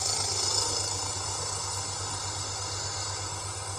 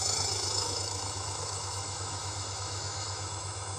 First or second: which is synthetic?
second